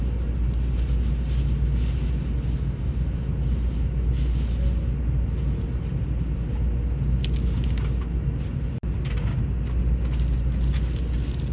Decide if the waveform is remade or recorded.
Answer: recorded